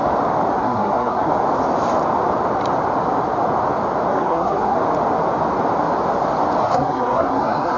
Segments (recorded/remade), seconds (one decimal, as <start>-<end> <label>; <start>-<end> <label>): 0.0-0.6 recorded; 0.6-1.3 remade; 1.3-4.1 recorded; 4.1-4.8 remade; 4.8-6.6 recorded; 6.6-7.8 remade